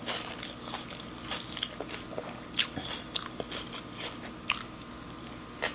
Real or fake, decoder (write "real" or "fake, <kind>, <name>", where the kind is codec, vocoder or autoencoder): real